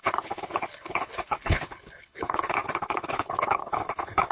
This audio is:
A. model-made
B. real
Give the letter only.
A